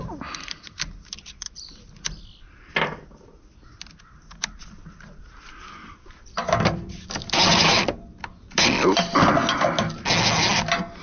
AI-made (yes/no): no